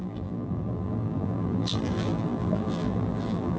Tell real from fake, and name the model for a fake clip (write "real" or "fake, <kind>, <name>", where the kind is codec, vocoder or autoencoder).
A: fake, vocoder, BigVGAN v2